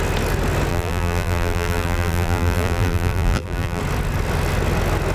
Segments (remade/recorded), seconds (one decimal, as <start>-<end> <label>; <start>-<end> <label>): 0.0-0.7 recorded; 0.7-3.8 remade; 3.8-5.1 recorded